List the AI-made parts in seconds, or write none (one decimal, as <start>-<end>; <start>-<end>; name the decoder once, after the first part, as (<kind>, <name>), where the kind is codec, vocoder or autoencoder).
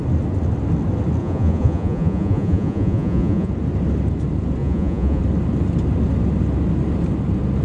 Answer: 1.2-3.5 (vocoder, Vocos); 4.6-5.2